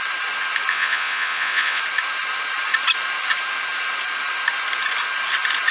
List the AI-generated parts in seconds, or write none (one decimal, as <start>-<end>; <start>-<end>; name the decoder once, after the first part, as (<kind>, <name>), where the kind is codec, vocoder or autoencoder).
0.7-1.8 (vocoder, Vocos)

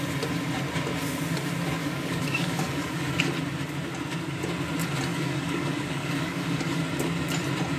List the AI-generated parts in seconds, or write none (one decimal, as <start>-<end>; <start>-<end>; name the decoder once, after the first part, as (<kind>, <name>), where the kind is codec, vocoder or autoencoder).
1.8-3.2 (codec, DAC); 5.1-6.8

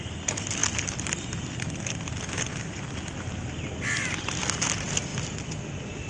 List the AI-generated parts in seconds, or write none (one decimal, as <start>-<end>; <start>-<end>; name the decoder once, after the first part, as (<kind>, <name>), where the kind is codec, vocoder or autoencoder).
none

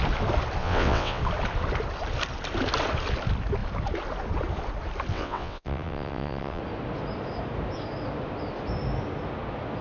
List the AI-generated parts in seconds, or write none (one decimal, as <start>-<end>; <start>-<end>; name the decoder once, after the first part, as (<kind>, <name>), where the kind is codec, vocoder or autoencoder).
0.6-1.2 (vocoder, WaveNeXt); 5.1-6.6

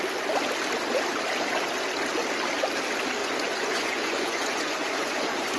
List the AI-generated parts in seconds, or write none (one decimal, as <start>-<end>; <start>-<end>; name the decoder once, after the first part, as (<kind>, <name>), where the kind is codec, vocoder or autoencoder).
3.2-5.6 (vocoder, Vocos)

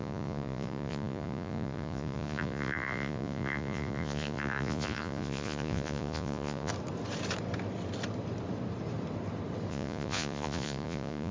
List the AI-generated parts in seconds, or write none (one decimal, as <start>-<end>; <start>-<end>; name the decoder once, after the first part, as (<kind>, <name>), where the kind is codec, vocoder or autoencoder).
0.0-6.7 (vocoder, Vocos); 9.7-11.3